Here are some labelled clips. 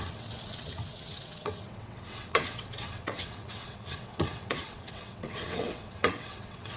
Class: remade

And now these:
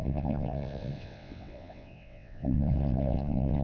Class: remade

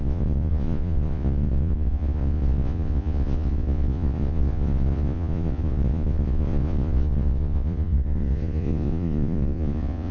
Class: remade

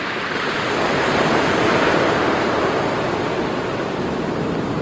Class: recorded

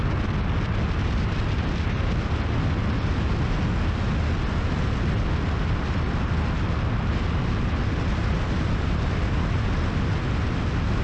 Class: recorded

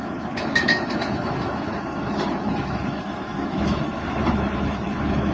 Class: remade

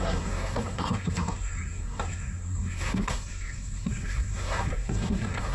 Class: remade